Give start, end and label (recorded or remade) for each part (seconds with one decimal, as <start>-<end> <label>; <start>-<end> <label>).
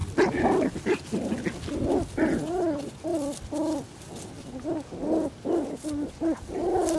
0.0-7.0 recorded